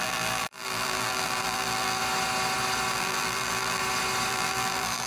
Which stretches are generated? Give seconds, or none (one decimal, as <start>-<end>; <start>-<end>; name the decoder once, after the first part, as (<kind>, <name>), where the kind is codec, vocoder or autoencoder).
0.0-2.0 (vocoder, BigVGAN v2); 2.9-3.8; 4.3-5.1

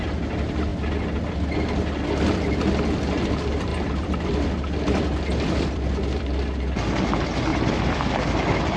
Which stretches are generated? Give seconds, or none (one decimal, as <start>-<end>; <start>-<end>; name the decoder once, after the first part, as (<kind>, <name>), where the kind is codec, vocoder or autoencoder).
3.7-6.2 (vocoder, BigVGAN v2); 7.5-8.1

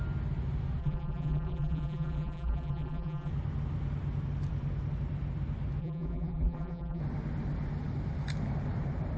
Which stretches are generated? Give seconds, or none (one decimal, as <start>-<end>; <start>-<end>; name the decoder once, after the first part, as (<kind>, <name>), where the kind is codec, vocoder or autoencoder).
0.8-3.3 (vocoder, BigVGAN v2); 5.8-7.0

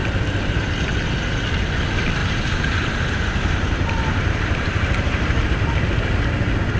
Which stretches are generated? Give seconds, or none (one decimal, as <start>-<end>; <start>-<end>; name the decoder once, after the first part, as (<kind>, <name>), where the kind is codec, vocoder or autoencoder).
2.2-5.6 (vocoder, BigVGAN v2)

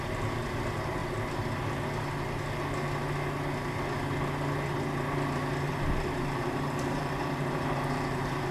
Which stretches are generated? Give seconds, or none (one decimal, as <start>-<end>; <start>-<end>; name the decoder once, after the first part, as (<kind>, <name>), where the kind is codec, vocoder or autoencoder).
0.0-1.0 (vocoder, BigVGAN v2); 5.7-8.5

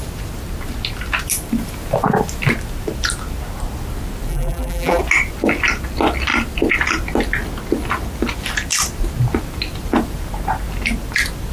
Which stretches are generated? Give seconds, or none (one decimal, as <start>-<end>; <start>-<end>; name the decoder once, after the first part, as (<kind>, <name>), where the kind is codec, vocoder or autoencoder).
4.3-5.0 (vocoder, BigVGAN v2)